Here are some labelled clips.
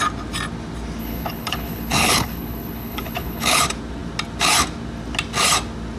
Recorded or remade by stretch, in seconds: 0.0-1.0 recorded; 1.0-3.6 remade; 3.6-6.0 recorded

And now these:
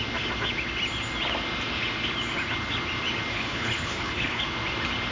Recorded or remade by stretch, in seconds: 0.0-3.3 recorded; 3.3-4.4 remade; 4.4-5.1 recorded

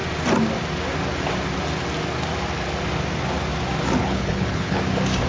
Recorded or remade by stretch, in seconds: 0.0-4.0 recorded; 4.0-4.8 remade; 4.8-5.3 recorded

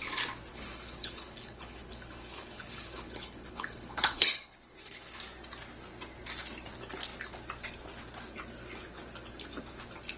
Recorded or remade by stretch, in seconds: 0.0-0.5 recorded; 0.5-5.2 remade; 5.2-10.2 recorded

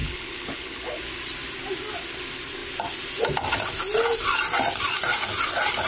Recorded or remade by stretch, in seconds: 0.0-1.0 remade; 1.0-5.9 recorded

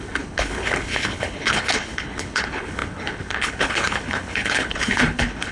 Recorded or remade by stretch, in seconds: 0.0-5.5 remade

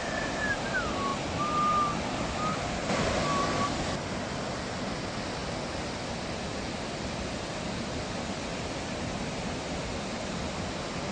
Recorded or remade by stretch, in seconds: 0.0-11.1 recorded

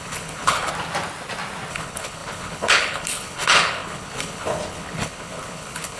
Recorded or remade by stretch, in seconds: 0.0-0.7 remade; 0.7-1.7 recorded; 1.7-6.0 remade